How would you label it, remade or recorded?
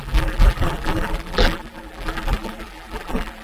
remade